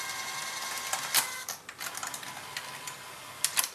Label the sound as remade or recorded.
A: recorded